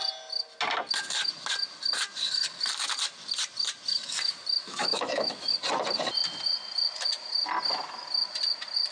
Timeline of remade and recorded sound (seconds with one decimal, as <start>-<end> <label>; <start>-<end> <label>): 0.0-4.6 recorded; 4.6-5.5 remade; 5.5-8.9 recorded